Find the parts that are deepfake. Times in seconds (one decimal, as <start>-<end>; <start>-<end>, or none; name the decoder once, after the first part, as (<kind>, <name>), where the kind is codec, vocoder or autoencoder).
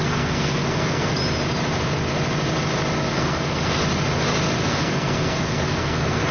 0.0-1.2 (codec, SNAC); 3.1-3.8; 4.6-6.3